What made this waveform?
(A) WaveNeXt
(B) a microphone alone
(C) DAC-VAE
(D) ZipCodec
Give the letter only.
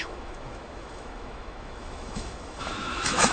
C